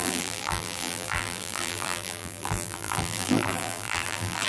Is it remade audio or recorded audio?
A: remade